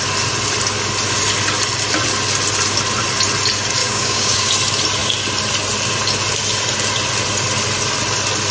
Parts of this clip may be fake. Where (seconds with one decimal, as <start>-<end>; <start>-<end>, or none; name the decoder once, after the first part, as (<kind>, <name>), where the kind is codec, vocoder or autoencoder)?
3.8-4.5 (codec, DAC)